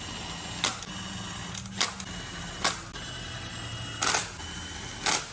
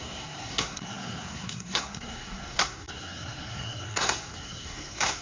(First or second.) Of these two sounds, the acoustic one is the first